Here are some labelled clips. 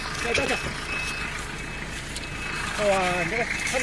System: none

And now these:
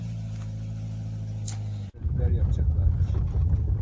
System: vocoder, BigVGAN v2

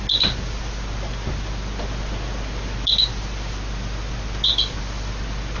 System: none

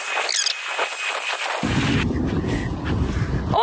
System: none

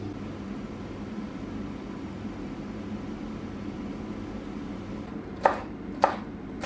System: none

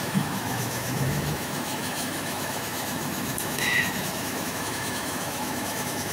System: autoencoder, DAC-VAE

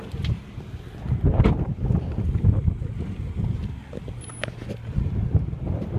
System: none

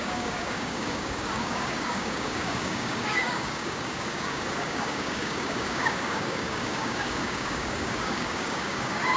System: codec, DAC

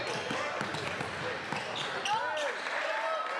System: none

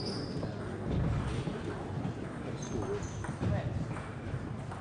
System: none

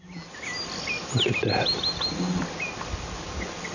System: none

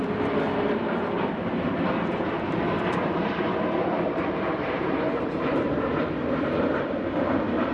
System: vocoder, BigVGAN v2